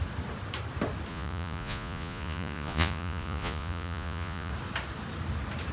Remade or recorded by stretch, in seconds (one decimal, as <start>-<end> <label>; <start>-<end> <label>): 0.0-1.1 recorded; 1.1-4.5 remade; 4.5-5.7 recorded